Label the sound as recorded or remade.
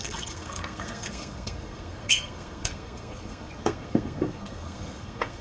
remade